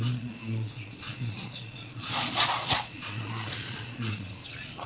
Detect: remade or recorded remade